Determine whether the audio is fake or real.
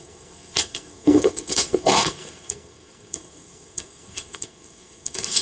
fake